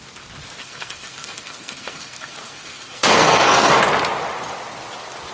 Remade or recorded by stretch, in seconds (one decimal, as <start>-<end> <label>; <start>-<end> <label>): 0.0-0.6 recorded; 0.6-3.8 remade; 3.8-5.3 recorded